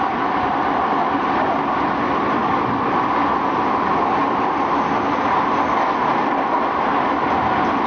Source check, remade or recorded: recorded